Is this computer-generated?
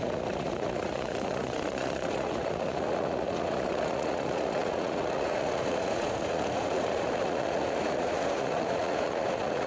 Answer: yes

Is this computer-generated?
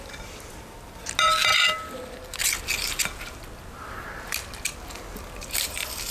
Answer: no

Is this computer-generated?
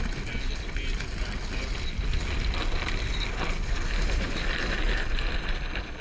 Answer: no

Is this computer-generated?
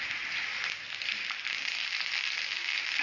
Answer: no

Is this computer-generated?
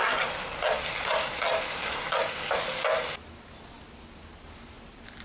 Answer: no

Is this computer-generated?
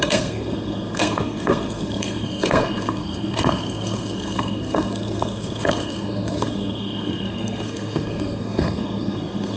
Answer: yes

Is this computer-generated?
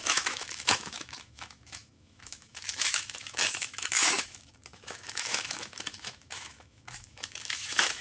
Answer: yes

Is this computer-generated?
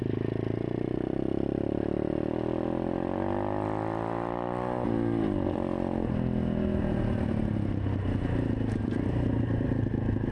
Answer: no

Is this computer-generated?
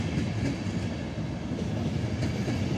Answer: no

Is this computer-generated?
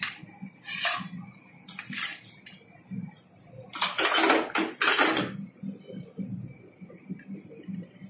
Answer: no